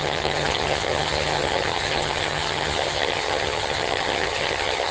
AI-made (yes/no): yes